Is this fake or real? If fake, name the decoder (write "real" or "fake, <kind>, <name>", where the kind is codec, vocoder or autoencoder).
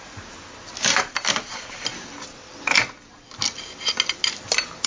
real